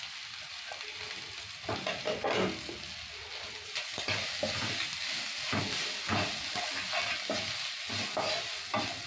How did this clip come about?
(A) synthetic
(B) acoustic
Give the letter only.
B